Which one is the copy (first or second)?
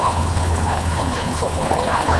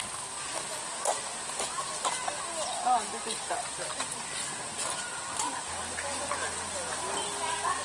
first